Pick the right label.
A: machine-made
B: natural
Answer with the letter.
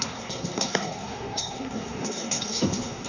A